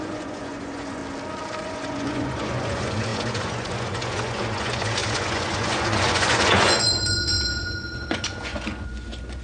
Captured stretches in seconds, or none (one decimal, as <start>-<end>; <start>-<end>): 1.0-1.6